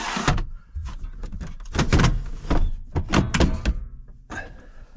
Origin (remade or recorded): recorded